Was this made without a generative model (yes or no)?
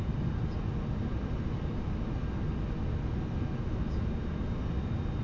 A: yes